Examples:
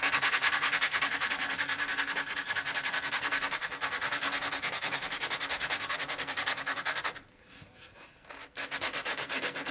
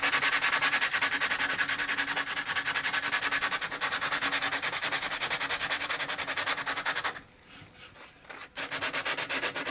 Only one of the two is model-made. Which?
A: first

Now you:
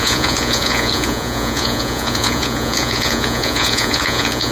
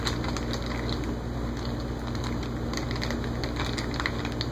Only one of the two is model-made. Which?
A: first